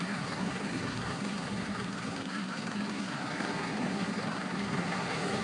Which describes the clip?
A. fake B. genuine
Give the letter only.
A